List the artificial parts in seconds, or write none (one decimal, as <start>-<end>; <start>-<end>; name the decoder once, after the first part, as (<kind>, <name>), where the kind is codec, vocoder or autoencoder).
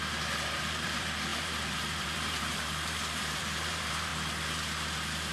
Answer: 0.0-4.1 (vocoder, BigVGAN v2)